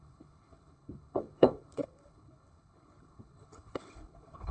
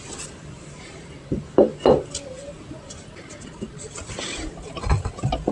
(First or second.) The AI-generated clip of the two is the first